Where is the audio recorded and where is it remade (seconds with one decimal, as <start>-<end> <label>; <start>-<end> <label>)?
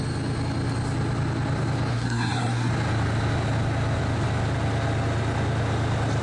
0.0-1.9 recorded; 1.9-2.7 remade; 2.7-6.2 recorded